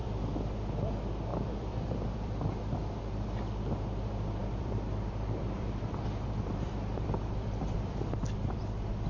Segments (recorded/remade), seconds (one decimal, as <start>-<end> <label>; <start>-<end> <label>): 0.0-1.3 recorded; 1.3-3.0 remade; 3.0-4.4 recorded; 4.4-8.6 remade; 8.6-9.1 recorded